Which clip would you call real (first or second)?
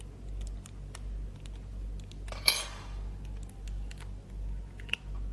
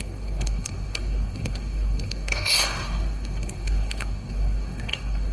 first